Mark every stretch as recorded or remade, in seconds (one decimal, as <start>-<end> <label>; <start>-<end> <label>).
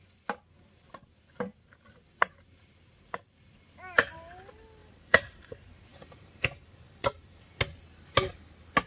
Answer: 0.0-4.8 recorded; 4.8-5.5 remade; 5.5-5.9 recorded; 5.9-7.5 remade; 7.5-8.9 recorded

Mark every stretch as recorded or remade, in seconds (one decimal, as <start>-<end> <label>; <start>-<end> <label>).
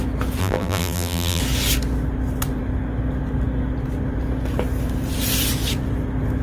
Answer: 0.0-0.4 recorded; 0.4-1.4 remade; 1.4-6.4 recorded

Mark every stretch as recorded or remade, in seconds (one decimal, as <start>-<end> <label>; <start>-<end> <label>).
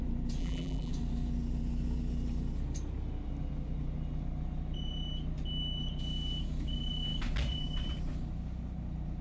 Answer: 0.0-0.4 recorded; 0.4-0.9 remade; 0.9-9.2 recorded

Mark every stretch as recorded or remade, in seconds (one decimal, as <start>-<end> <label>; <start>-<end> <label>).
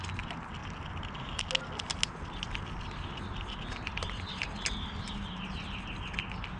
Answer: 0.0-6.6 recorded